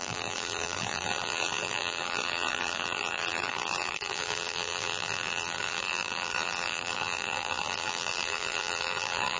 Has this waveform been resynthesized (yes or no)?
yes